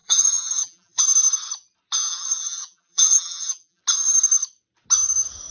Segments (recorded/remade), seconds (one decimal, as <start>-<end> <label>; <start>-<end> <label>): 0.0-1.0 remade; 1.0-2.0 recorded; 2.0-3.8 remade; 3.8-5.5 recorded